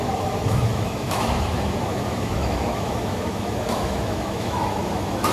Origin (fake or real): fake